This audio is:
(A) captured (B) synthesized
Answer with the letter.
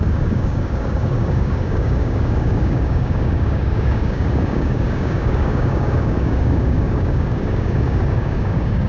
B